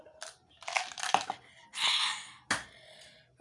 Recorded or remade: recorded